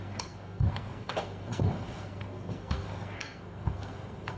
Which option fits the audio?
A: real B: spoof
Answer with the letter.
B